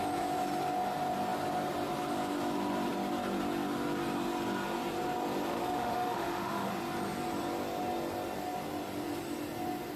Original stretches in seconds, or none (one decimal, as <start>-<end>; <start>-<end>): 0.0-5.5; 6.7-10.0